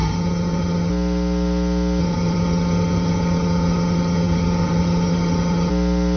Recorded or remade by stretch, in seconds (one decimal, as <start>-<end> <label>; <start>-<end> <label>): 0.0-0.9 remade; 0.9-2.0 recorded; 2.0-5.7 remade; 5.7-6.2 recorded

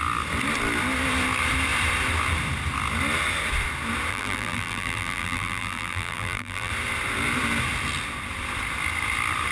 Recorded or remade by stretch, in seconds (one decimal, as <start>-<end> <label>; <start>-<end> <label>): 0.0-4.1 recorded; 4.1-6.7 remade; 6.7-9.5 recorded

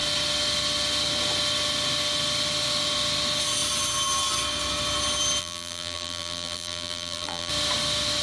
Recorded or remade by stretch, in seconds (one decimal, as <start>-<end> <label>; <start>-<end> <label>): 0.0-5.4 recorded; 5.4-7.5 remade; 7.5-8.2 recorded

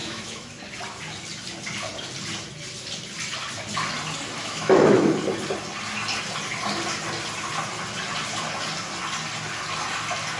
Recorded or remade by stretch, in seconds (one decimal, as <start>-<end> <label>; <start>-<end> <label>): 0.0-0.6 remade; 0.6-4.4 recorded; 4.4-5.1 remade; 5.1-10.4 recorded